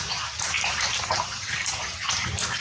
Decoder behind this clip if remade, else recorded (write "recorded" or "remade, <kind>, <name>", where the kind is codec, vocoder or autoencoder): remade, vocoder, BigVGAN v2